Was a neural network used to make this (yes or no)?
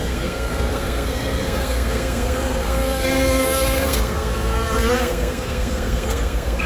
yes